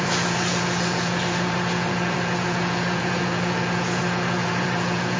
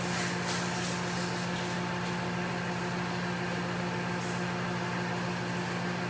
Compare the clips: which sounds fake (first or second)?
first